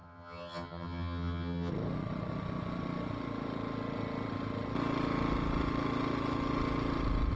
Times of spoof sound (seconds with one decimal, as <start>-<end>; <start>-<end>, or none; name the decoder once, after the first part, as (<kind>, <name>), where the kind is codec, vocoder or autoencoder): 0.0-1.7 (vocoder, HiFi-GAN)